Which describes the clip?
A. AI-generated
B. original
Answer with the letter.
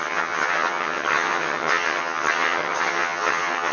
A